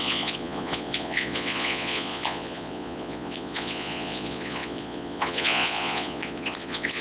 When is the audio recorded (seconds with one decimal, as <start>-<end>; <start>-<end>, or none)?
none